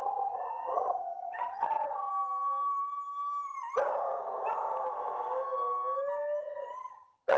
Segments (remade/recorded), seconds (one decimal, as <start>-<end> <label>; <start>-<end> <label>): 0.0-2.1 remade; 2.1-6.4 recorded; 6.4-7.4 remade